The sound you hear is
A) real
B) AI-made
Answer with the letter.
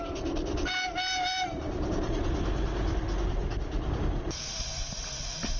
A